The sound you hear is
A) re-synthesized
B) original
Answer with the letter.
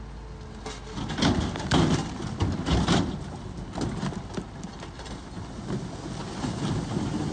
B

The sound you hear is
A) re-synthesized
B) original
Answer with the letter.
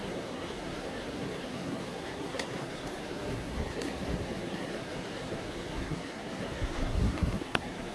A